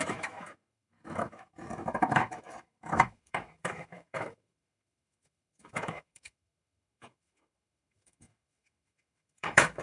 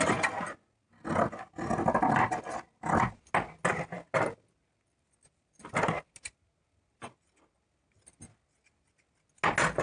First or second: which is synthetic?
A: first